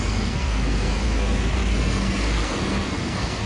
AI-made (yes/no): yes